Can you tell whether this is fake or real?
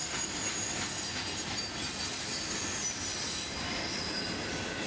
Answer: real